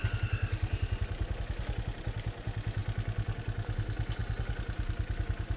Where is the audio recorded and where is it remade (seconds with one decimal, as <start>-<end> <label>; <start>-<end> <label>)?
0.0-5.6 recorded